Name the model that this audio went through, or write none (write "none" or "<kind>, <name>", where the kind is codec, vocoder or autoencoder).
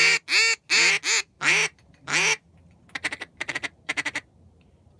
none